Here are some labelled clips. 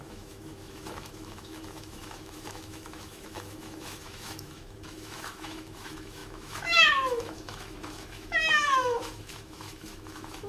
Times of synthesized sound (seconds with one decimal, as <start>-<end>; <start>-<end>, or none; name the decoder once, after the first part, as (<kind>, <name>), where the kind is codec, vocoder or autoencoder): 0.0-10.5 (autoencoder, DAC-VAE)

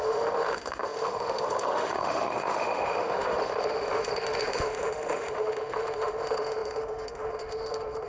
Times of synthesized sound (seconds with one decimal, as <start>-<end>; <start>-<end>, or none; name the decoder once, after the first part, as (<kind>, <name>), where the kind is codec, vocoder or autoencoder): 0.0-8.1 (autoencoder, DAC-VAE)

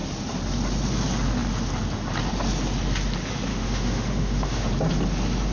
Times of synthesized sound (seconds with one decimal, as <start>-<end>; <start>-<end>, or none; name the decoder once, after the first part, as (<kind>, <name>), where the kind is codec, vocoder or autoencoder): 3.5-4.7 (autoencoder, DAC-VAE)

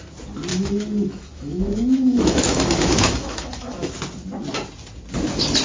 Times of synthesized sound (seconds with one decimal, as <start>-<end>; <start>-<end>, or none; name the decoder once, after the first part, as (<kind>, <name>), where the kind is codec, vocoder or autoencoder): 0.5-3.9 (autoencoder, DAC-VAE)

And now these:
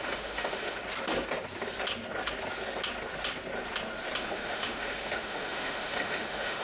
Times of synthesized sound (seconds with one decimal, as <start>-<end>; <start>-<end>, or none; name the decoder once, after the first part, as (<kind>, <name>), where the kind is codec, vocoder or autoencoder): 0.0-0.8 (autoencoder, DAC-VAE); 4.2-6.6

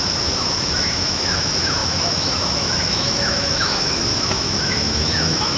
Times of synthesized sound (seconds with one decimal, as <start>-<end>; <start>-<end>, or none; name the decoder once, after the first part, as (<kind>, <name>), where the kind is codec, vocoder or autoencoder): 0.0-5.6 (autoencoder, DAC-VAE)